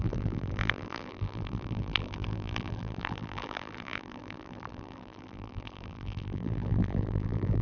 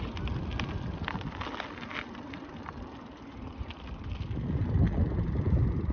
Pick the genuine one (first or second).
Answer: second